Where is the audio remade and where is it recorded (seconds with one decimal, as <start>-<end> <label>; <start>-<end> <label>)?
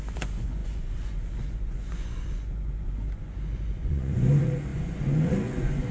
0.0-5.9 remade